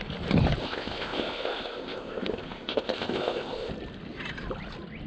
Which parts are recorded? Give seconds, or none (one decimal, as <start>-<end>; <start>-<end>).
0.0-0.6; 3.7-5.1